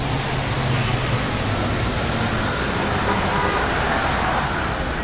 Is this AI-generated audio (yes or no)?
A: no